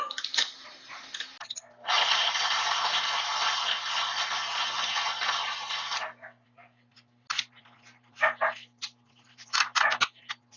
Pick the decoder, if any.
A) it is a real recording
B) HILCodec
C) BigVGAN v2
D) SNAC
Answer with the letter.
A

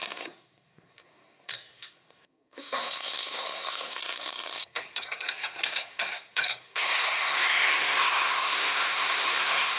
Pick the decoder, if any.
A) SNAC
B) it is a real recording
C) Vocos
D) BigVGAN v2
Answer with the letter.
A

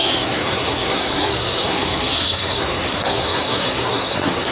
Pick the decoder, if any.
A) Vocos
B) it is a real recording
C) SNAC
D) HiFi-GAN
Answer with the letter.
C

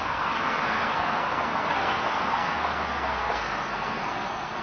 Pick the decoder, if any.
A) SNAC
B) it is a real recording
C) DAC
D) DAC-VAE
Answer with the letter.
A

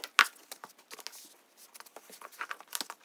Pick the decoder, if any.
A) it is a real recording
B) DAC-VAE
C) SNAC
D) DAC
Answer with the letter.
A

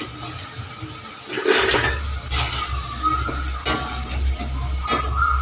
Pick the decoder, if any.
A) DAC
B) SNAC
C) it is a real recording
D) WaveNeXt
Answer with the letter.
C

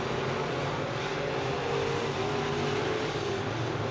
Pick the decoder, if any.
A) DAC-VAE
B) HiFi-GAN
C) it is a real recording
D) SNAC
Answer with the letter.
C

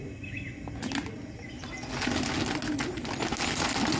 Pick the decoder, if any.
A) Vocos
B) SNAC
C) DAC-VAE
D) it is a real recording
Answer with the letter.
D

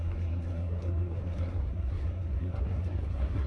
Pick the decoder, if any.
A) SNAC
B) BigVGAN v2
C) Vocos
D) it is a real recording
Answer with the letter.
A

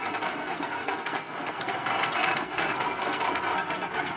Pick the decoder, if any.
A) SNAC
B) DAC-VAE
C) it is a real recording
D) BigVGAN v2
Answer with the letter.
A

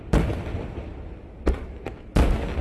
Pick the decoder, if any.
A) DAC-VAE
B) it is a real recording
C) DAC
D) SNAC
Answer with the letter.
B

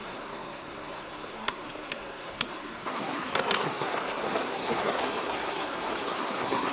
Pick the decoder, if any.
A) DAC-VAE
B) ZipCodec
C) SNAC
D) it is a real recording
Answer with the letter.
C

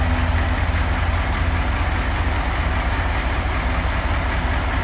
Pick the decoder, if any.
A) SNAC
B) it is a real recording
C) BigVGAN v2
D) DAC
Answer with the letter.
B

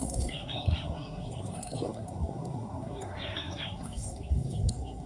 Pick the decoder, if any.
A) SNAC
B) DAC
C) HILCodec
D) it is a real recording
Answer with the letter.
A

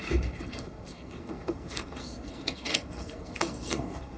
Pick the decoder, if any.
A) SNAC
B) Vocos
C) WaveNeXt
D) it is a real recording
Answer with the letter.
A